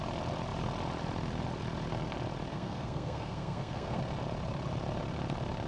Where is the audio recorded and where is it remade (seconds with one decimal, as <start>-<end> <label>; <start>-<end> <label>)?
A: 0.0-2.5 recorded; 2.5-4.0 remade; 4.0-5.7 recorded